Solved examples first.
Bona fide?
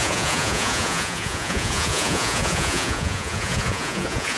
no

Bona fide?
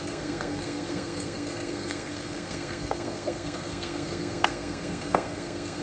no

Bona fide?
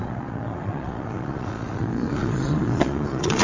no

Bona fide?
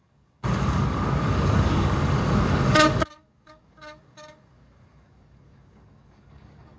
no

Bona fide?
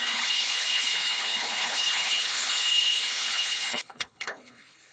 no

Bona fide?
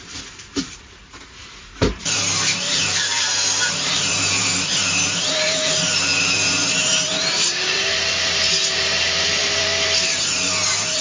no